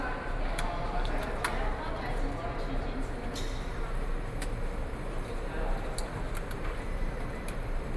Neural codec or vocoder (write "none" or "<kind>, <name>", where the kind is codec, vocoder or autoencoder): none